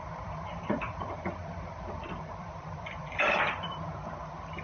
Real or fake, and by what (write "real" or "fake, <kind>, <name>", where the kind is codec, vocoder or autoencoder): fake, vocoder, BigVGAN v2